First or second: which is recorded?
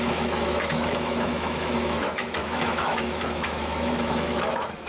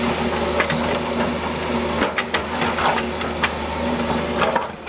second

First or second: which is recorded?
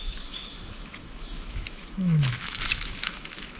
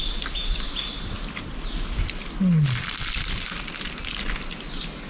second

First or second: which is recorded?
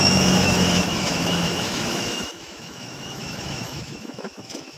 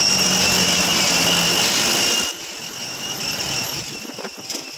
second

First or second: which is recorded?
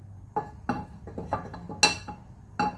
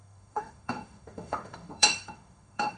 first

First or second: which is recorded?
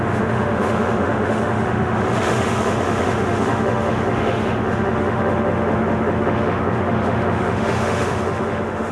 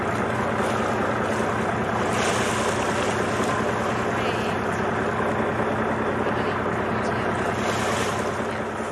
second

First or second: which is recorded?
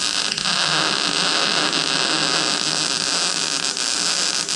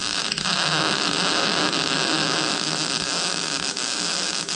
first